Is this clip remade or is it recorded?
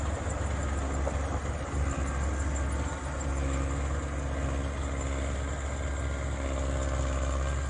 recorded